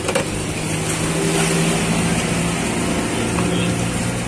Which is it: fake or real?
real